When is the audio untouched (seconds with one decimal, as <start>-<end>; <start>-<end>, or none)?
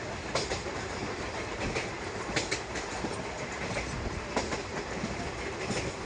0.0-6.1